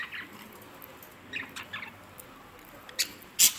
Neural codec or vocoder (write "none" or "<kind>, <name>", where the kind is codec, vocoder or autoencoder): none